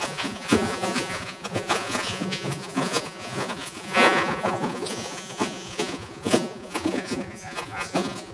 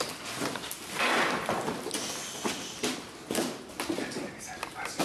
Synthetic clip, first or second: first